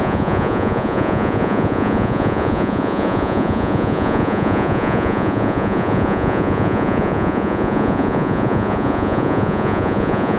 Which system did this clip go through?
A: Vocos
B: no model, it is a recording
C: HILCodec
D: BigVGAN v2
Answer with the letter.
A